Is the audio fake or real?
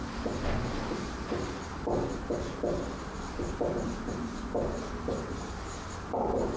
real